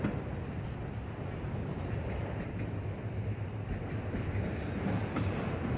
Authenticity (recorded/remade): recorded